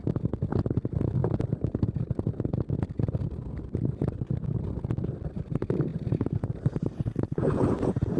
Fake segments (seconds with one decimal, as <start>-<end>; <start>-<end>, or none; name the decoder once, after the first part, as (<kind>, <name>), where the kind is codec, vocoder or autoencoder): 5.9-7.4 (vocoder, BigVGAN v2)